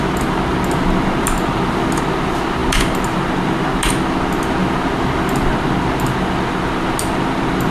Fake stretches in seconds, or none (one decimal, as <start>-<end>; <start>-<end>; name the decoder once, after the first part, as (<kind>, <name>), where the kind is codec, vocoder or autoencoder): none